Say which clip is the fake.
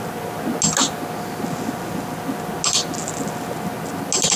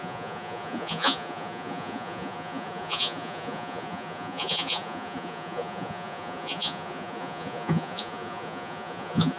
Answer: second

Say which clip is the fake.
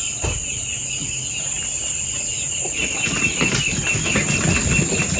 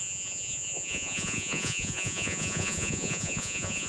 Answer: second